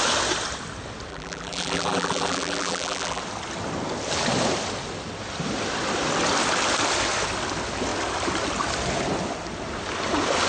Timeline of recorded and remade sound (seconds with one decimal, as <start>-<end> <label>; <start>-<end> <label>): 0.0-1.1 recorded; 1.1-3.2 remade; 3.2-10.5 recorded